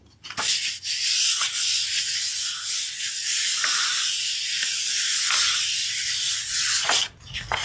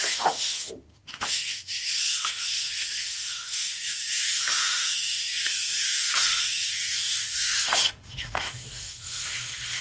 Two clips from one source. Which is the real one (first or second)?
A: first